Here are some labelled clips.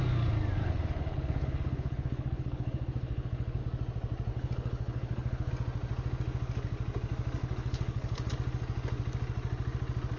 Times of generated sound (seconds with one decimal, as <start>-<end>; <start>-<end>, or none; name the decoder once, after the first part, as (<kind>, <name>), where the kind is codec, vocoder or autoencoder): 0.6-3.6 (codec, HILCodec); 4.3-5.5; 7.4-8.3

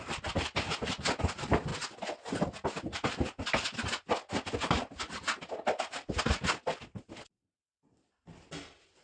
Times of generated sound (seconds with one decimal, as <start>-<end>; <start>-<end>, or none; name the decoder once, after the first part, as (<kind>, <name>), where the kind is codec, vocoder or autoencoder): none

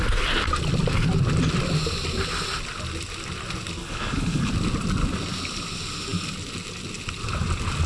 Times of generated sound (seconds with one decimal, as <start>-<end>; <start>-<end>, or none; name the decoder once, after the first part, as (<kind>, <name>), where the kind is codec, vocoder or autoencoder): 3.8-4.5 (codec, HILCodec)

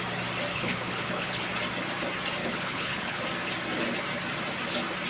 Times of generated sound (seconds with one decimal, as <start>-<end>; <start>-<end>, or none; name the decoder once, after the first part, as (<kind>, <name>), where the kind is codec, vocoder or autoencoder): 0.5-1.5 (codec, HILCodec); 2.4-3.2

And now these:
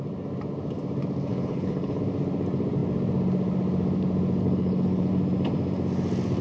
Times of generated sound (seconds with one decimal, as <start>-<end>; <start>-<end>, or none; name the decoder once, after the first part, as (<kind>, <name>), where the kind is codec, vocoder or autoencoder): 1.3-2.0 (codec, HILCodec); 4.4-5.1